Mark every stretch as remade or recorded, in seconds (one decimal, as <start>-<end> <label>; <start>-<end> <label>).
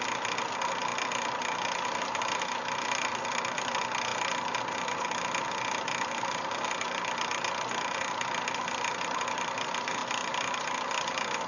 0.0-11.5 recorded